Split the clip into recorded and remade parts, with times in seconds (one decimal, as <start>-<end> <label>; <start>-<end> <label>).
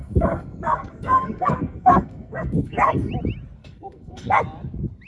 0.0-3.1 remade; 3.1-3.6 recorded; 3.6-4.4 remade; 4.4-5.1 recorded